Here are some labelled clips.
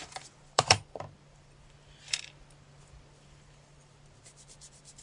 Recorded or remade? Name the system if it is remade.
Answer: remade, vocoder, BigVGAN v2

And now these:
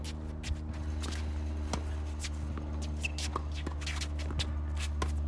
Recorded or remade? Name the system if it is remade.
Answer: recorded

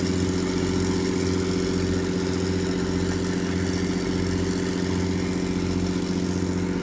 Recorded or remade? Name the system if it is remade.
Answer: recorded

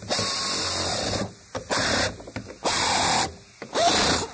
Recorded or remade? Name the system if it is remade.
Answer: recorded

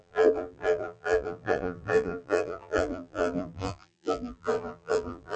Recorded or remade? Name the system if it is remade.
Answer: remade, vocoder, BigVGAN v2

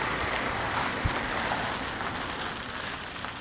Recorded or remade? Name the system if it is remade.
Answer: recorded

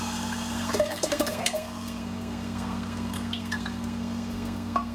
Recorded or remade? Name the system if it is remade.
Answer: remade, codec, SNAC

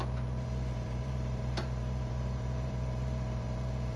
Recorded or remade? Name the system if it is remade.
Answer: remade, vocoder, BigVGAN v2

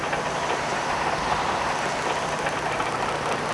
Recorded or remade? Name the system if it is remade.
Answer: recorded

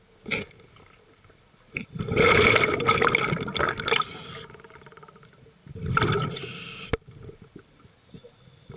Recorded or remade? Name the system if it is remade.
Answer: recorded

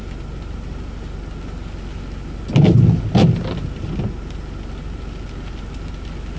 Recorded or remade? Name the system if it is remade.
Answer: recorded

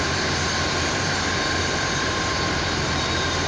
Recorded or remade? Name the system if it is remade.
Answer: remade, vocoder, BigVGAN v2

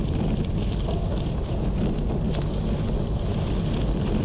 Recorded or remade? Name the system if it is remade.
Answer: recorded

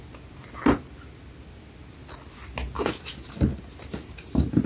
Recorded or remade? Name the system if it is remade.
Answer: recorded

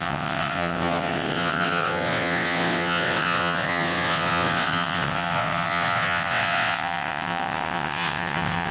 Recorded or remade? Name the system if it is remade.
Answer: remade, vocoder, WaveNeXt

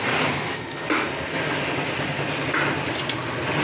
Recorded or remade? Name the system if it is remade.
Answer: recorded